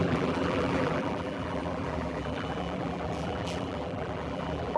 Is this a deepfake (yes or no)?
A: yes